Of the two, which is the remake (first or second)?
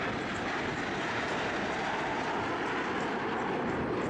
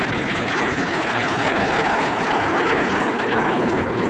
second